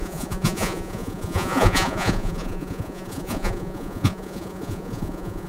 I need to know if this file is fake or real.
fake